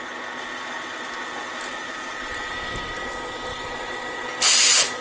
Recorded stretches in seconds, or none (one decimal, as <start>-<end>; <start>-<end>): 0.0-1.4; 2.9-3.5; 4.0-5.0